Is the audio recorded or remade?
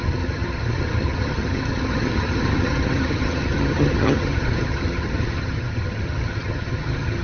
remade